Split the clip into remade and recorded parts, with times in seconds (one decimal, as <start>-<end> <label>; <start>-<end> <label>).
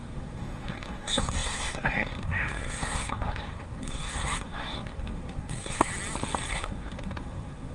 0.0-5.9 remade; 5.9-6.5 recorded; 6.5-7.7 remade